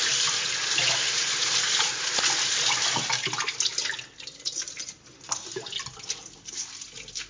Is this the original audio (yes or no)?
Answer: yes